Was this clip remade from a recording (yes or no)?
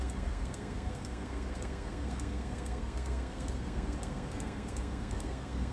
yes